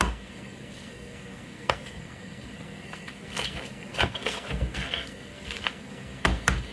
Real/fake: fake